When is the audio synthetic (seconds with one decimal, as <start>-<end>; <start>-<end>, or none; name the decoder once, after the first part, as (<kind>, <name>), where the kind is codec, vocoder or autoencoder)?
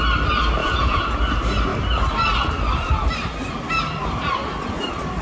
0.6-1.2 (vocoder, Vocos)